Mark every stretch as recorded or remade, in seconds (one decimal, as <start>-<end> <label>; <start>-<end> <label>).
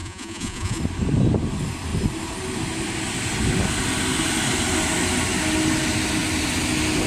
0.0-0.8 remade; 0.8-7.1 recorded